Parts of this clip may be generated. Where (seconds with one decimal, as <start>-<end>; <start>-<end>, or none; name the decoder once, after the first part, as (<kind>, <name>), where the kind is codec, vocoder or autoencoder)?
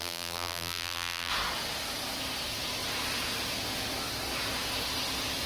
0.0-1.3 (vocoder, BigVGAN v2)